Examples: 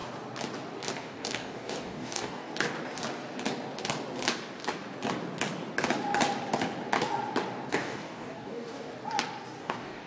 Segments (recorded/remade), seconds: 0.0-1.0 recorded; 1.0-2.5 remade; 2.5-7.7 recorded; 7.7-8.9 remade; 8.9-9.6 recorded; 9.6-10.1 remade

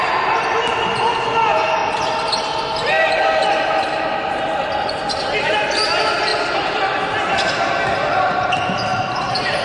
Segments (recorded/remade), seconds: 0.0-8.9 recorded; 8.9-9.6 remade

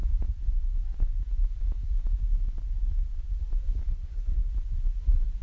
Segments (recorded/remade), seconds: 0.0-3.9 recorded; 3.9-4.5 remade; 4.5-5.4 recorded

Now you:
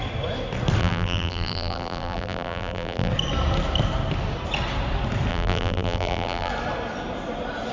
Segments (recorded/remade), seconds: 0.0-0.8 recorded; 0.8-3.1 remade; 3.1-5.3 recorded; 5.3-6.5 remade; 6.5-7.7 recorded